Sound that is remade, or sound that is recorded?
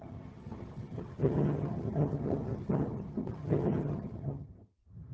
remade